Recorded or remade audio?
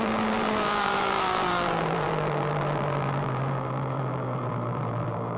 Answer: remade